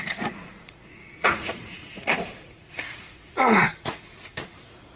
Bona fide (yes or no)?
no